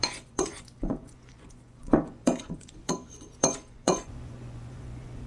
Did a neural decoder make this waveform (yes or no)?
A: yes